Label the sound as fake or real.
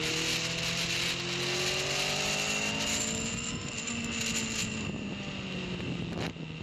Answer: real